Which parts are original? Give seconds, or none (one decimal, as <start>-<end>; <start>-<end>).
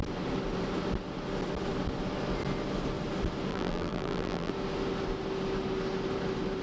0.0-3.5; 4.5-6.6